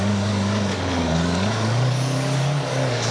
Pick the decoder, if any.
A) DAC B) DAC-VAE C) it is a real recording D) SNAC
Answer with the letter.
A